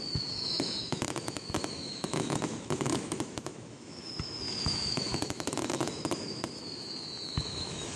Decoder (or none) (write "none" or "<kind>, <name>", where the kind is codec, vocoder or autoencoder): autoencoder, DAC-VAE